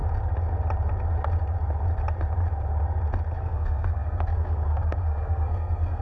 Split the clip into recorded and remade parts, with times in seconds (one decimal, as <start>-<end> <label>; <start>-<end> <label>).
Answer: 0.0-3.4 recorded; 3.4-6.0 remade